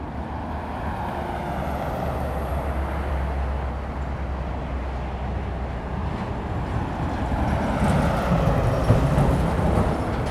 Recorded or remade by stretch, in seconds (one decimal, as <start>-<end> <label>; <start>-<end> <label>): 0.0-10.3 recorded